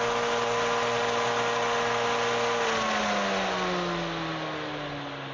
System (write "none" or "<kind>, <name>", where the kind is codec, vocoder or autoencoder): none